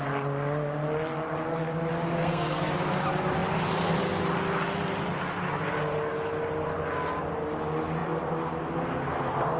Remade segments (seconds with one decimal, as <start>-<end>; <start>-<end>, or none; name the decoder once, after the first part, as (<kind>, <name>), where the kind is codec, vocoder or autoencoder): 2.2-2.7 (codec, SNAC)